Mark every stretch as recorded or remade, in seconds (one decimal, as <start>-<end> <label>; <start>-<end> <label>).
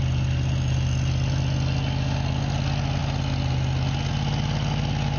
0.0-5.2 recorded